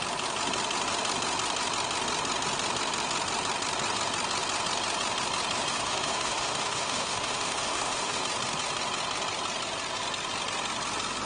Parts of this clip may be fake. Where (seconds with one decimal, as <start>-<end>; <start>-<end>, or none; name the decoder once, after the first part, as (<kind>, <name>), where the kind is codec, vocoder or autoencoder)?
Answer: 5.7-8.2 (autoencoder, DAC-VAE)